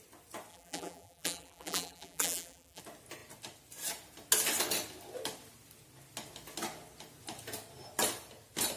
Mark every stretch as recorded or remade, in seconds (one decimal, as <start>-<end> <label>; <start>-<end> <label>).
0.0-0.5 recorded; 0.5-2.8 remade; 2.8-8.8 recorded